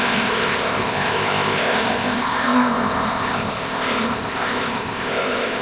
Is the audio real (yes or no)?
no